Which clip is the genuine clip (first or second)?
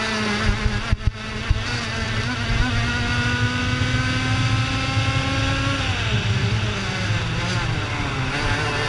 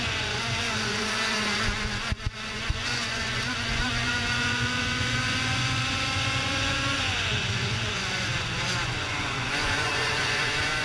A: first